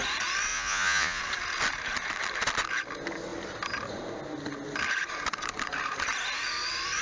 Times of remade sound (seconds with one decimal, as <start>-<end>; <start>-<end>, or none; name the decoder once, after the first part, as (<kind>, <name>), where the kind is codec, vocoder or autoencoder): 0.5-1.2 (vocoder, Vocos)